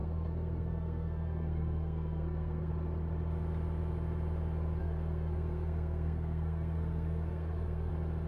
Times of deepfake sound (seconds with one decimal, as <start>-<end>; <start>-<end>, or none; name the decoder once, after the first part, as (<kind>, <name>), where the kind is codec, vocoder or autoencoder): 0.0-2.7 (codec, SNAC); 4.8-7.9